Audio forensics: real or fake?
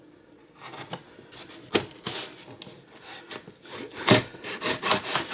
real